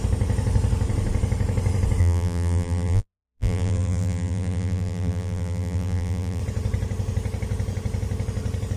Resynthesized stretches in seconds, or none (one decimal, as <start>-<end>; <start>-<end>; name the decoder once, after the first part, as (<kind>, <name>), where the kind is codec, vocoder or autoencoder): 2.0-6.4 (vocoder, BigVGAN v2)